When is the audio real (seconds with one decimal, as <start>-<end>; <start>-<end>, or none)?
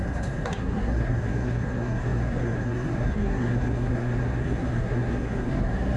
none